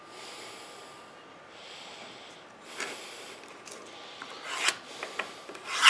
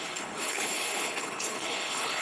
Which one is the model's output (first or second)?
second